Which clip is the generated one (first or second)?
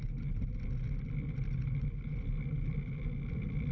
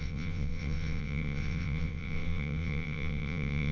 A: second